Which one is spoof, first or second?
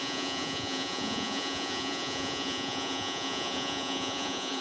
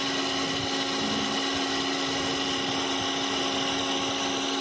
first